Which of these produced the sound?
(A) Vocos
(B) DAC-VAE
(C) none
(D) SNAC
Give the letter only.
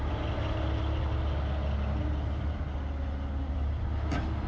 C